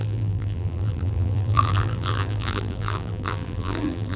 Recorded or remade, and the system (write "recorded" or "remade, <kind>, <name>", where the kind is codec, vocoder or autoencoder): remade, vocoder, BigVGAN v2